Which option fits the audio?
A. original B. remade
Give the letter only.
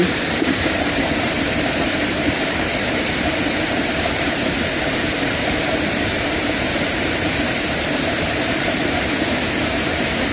B